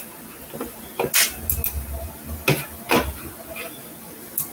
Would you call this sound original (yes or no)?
yes